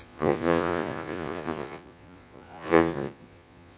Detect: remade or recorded remade